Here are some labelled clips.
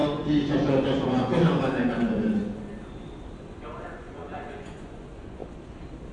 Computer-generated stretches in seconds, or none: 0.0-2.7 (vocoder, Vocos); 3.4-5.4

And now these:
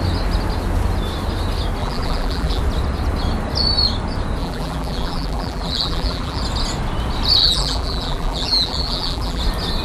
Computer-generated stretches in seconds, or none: 1.8-2.6 (vocoder, BigVGAN v2); 4.4-6.4; 7.4-9.4

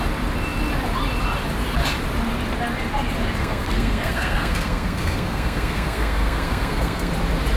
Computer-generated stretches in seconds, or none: 3.4-7.1 (codec, SNAC)

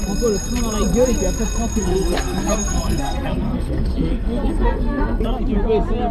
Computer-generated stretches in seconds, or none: 1.7-5.4 (codec, SNAC)

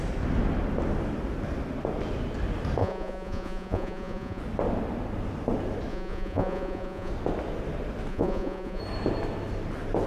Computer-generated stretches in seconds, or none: 2.8-4.4 (vocoder, Vocos); 5.9-7.1; 8.1-8.8

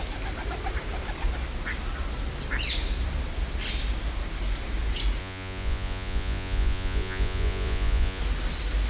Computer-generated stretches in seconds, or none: 5.2-8.2 (vocoder, Vocos)